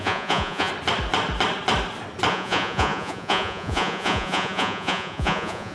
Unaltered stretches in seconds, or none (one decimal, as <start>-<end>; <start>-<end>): 0.7-2.3